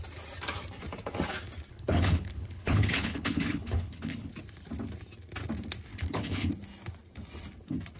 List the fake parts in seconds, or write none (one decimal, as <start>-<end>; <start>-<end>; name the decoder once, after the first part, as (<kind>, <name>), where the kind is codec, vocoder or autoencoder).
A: 1.7-4.3 (codec, HILCodec); 5.9-6.5